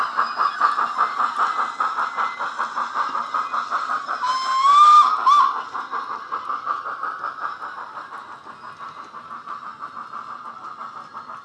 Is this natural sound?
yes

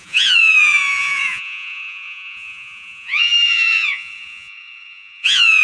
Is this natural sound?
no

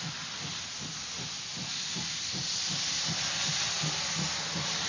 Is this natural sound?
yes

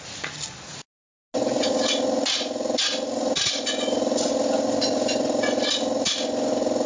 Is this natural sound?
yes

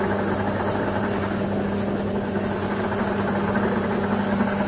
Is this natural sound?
yes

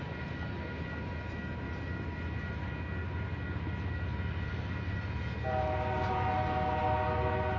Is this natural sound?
yes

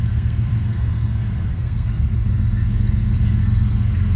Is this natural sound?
no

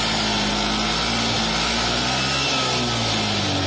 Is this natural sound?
yes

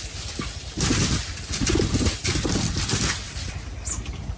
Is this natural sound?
yes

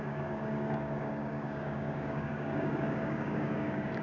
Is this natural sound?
no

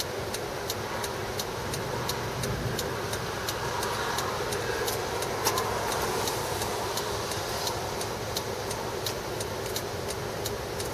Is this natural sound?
yes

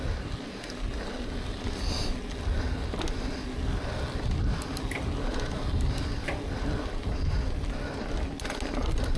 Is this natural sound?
yes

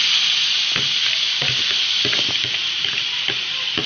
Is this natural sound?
yes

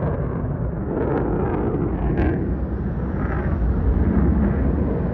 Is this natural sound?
yes